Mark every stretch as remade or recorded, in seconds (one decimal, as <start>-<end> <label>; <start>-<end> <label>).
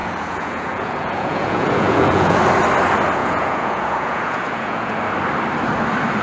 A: 0.0-2.4 remade; 2.4-3.2 recorded; 3.2-4.9 remade; 4.9-6.2 recorded